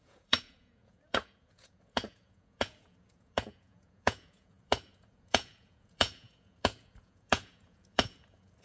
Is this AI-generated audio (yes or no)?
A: yes